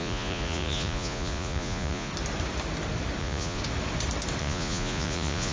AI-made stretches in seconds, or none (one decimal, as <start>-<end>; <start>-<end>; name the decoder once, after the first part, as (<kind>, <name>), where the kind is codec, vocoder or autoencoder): 0.0-2.1 (vocoder, Vocos); 3.2-3.6; 4.4-5.5